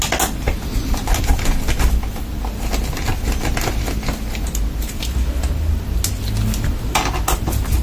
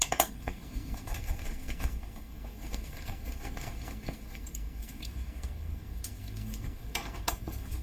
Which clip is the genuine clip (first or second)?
first